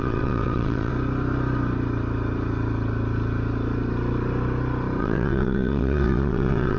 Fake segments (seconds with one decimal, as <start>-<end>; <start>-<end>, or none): 0.0-0.9; 5.0-6.8